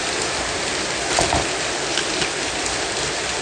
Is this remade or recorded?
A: recorded